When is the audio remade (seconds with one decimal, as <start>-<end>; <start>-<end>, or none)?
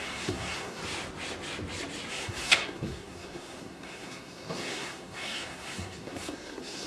0.0-0.8; 2.1-6.9